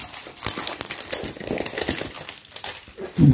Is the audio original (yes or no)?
yes